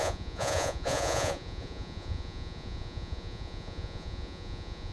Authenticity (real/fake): fake